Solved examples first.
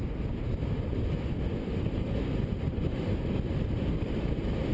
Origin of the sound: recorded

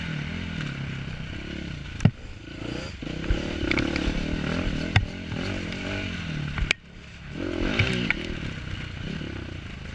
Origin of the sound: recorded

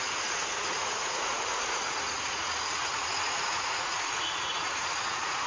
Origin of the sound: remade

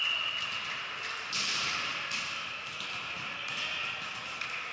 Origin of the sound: recorded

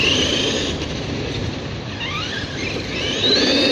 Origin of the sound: recorded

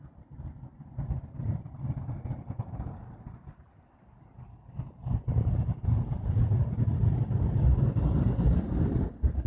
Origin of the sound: recorded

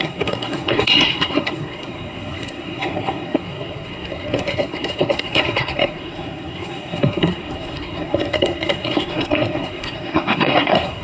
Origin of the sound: remade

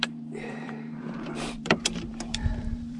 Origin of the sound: remade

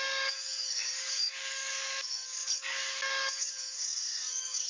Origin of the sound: remade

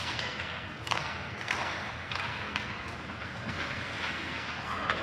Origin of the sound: remade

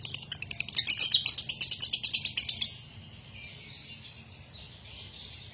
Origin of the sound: recorded